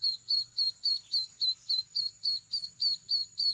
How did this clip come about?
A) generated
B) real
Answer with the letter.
B